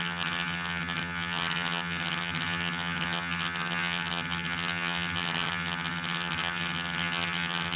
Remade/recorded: remade